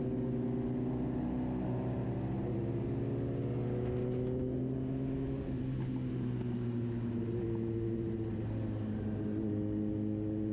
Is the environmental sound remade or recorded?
recorded